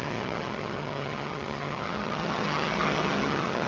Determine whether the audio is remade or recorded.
remade